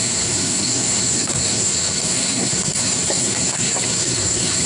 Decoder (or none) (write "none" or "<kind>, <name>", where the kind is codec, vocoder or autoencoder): codec, SNAC